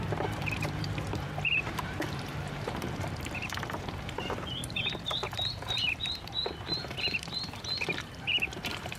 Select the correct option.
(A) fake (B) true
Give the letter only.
A